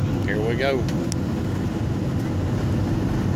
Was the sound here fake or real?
real